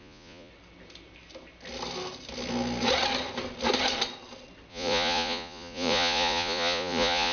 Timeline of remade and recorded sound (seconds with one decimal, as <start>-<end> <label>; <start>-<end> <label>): 0.0-0.5 remade; 0.5-4.7 recorded; 4.7-7.3 remade